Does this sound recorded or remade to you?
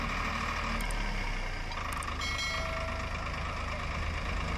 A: recorded